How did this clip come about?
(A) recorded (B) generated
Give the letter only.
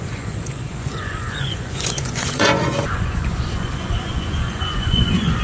B